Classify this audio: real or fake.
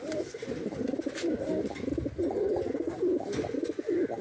real